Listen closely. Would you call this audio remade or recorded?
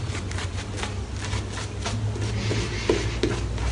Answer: recorded